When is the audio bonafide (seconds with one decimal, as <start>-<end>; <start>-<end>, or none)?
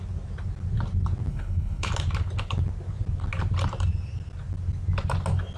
0.0-1.3; 1.9-5.6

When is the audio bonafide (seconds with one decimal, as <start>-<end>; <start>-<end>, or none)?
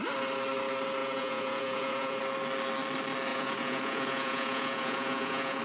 0.0-1.0; 2.2-3.3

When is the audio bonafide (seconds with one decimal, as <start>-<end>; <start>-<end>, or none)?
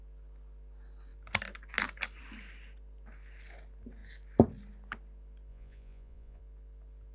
0.0-5.5; 6.4-7.1